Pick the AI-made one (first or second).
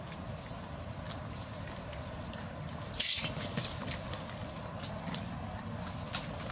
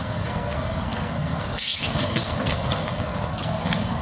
second